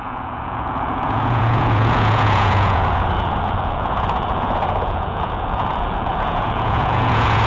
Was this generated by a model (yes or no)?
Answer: yes